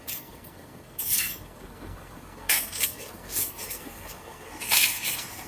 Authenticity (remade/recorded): remade